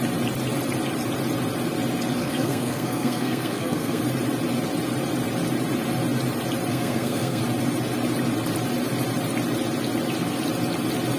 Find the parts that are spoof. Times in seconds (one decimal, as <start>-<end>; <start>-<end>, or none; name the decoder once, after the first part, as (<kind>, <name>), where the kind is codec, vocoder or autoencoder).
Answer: 2.2-4.0 (codec, SNAC); 6.7-7.4